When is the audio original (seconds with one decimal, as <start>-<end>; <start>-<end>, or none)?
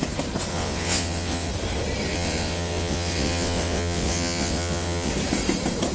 0.0-0.5; 1.5-2.1; 5.1-5.9